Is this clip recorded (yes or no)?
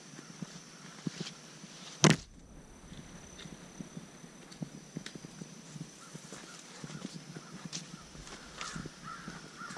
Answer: yes